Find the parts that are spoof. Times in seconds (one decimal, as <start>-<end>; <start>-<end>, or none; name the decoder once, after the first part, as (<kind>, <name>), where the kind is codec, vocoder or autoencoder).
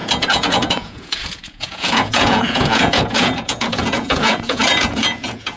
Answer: 0.0-5.6 (vocoder, Vocos)